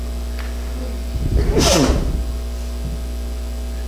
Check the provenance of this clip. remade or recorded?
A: recorded